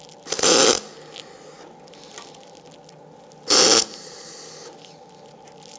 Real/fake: real